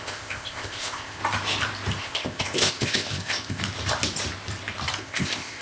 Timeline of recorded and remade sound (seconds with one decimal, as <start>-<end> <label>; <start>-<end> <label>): 0.0-1.2 remade; 1.2-2.0 recorded; 2.0-3.6 remade; 3.6-5.0 recorded; 5.0-5.6 remade